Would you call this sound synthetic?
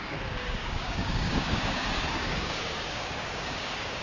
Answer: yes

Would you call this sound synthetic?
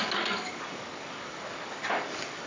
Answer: yes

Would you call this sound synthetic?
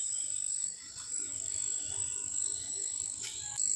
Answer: yes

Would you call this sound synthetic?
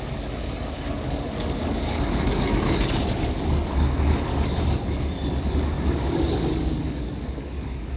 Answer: yes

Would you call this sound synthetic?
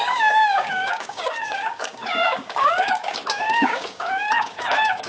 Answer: yes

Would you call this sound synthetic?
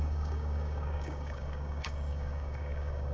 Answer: yes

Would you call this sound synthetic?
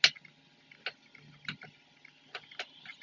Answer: no